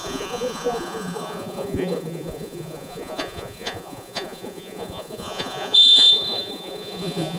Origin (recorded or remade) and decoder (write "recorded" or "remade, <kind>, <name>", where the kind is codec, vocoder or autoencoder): remade, vocoder, Vocos